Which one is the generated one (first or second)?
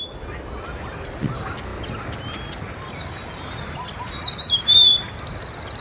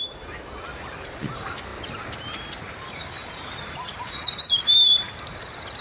second